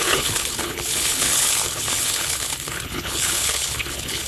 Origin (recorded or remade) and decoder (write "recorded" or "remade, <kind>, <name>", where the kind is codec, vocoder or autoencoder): remade, codec, HILCodec